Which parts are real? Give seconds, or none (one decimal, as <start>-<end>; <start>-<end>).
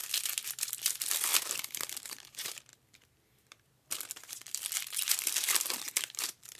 0.0-0.7; 1.3-2.0